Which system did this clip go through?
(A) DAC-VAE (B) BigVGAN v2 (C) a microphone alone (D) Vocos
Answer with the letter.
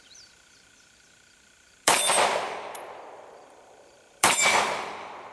B